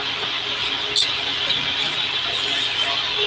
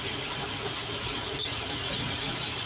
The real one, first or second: first